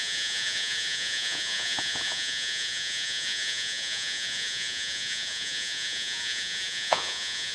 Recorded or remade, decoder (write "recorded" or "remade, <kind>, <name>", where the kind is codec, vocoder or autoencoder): remade, vocoder, Vocos